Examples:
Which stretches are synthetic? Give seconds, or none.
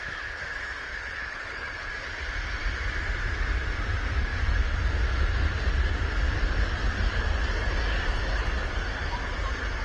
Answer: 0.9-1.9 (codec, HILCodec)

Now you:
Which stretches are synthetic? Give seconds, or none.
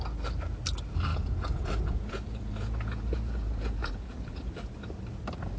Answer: 1.1-4.5 (vocoder, Vocos)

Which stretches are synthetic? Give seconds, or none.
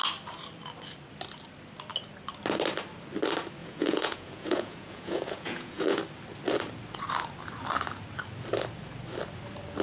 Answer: 3.6-6.0 (vocoder, Vocos)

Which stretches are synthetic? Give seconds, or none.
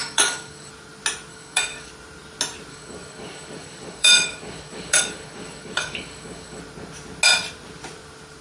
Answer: 0.0-0.7 (codec, DAC); 1.3-1.9; 2.7-6.6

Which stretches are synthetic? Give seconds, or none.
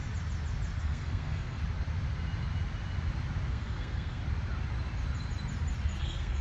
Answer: 0.8-1.6 (codec, SNAC); 3.5-4.2; 6.0-6.4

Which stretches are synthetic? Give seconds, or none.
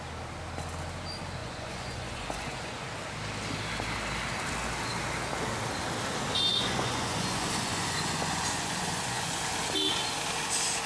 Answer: 1.4-2.9 (vocoder, Vocos); 6.5-9.4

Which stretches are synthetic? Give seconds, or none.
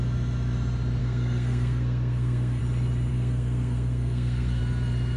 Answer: 1.0-2.6 (codec, SNAC); 3.1-4.6